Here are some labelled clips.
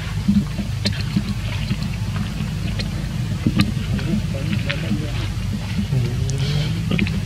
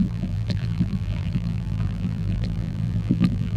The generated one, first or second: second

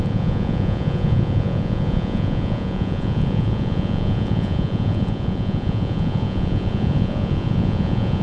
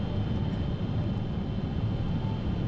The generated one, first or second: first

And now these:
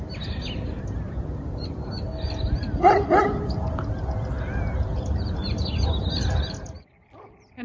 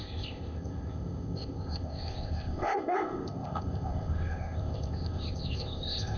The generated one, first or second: second